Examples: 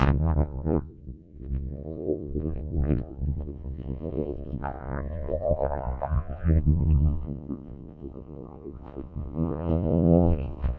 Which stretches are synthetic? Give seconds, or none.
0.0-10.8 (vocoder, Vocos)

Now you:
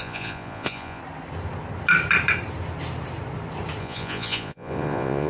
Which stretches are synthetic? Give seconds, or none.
0.0-1.0 (vocoder, Vocos); 3.8-5.3

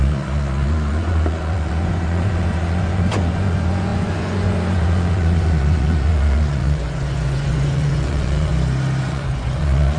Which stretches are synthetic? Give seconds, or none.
0.0-8.5 (vocoder, Vocos); 9.0-10.0

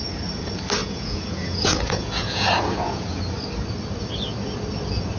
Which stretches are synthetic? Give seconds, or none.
0.8-3.2 (vocoder, Vocos)

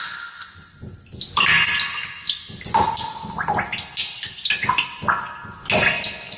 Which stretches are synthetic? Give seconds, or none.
none